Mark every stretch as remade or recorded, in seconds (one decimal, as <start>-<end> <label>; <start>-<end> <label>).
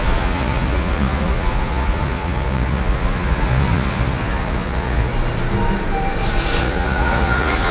0.0-5.1 remade; 5.1-6.6 recorded; 6.6-7.7 remade